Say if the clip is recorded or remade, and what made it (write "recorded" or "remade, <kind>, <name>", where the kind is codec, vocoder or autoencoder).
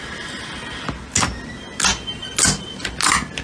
recorded